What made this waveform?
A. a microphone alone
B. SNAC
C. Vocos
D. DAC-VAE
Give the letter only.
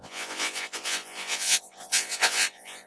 C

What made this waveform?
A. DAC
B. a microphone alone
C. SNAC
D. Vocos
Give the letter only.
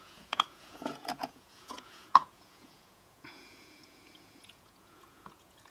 D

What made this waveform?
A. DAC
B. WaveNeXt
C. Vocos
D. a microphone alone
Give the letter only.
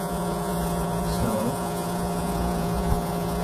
C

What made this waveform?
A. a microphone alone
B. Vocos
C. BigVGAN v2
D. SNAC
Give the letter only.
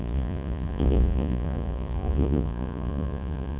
B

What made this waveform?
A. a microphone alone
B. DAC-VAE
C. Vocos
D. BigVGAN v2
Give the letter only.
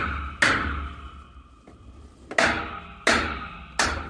A